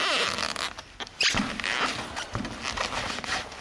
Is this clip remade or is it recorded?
recorded